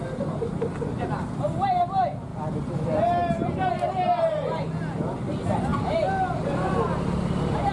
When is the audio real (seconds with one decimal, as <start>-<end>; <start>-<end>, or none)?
0.0-7.7